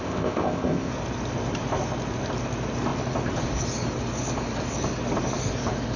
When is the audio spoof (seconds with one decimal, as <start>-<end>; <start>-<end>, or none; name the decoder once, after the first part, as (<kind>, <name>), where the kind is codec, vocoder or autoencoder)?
0.0-0.9 (codec, ZipCodec)

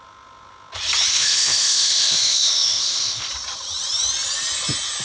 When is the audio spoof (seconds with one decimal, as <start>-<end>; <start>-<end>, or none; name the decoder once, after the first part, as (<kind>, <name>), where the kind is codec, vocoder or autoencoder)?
1.1-3.3 (codec, ZipCodec)

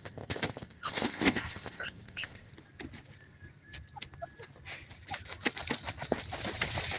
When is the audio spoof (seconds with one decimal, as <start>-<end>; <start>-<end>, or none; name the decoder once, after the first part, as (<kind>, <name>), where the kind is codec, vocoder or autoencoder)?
0.0-2.5 (codec, ZipCodec)

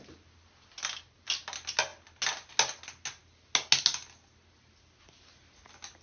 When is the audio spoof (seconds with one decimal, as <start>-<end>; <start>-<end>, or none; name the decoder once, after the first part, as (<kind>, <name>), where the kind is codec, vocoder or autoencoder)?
none